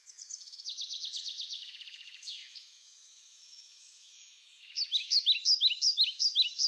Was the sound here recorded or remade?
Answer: remade